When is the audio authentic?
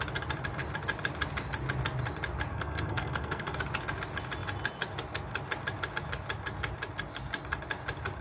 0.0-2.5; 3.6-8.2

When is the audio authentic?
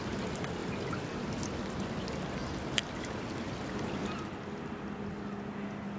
0.0-6.0